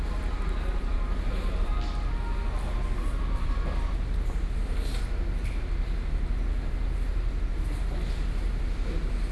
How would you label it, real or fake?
real